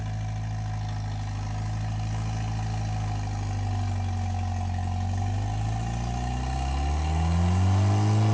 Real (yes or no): yes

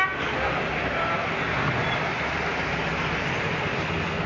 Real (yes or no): yes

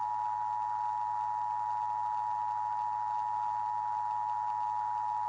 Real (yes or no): yes